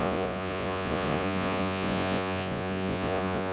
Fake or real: fake